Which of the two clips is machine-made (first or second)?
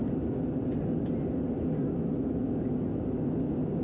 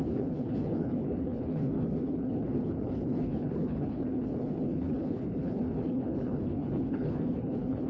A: second